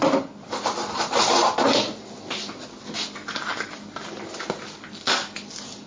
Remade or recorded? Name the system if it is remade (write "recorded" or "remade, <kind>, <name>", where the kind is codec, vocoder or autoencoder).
recorded